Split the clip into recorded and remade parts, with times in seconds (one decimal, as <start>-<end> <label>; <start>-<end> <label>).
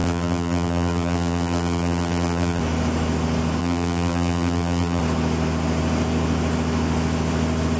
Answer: 0.0-2.6 remade; 2.6-3.6 recorded; 3.6-5.0 remade; 5.0-7.8 recorded